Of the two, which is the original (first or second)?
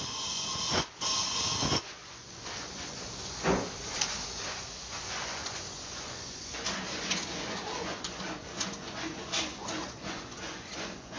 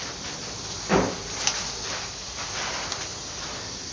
second